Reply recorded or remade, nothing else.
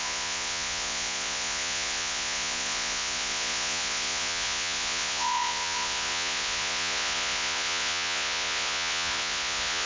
remade